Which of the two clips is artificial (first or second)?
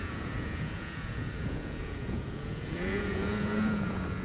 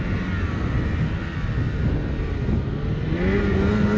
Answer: first